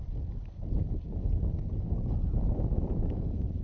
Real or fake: real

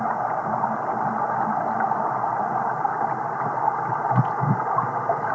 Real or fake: real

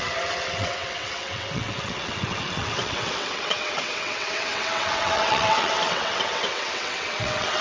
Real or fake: fake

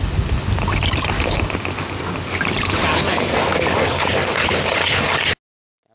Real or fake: real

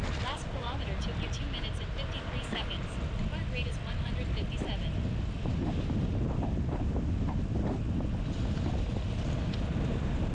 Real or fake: real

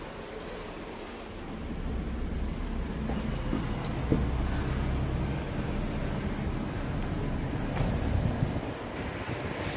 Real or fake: real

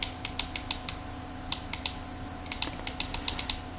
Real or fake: real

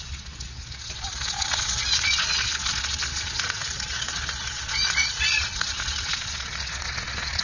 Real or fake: fake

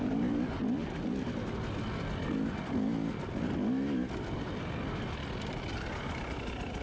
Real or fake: real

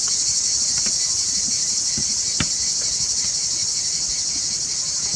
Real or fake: real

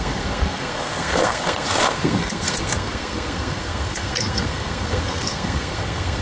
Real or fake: fake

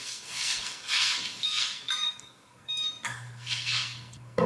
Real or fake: fake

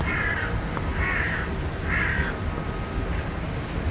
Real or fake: fake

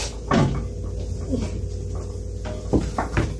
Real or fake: real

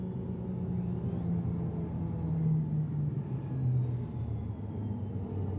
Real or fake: real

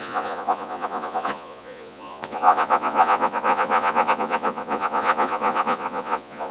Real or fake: fake